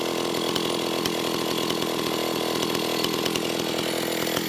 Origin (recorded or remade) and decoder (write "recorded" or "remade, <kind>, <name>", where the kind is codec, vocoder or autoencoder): recorded